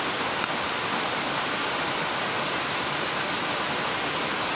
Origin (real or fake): real